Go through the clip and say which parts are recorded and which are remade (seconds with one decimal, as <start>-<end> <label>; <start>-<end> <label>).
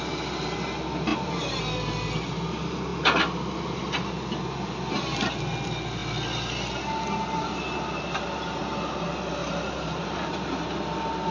0.0-1.1 recorded; 1.1-1.6 remade; 1.6-9.4 recorded; 9.4-10.0 remade; 10.0-11.3 recorded